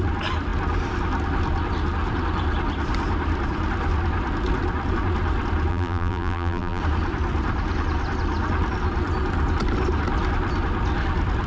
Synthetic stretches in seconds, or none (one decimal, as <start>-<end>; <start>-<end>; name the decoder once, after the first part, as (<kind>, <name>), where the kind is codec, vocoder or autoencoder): 5.7-6.8 (vocoder, BigVGAN v2)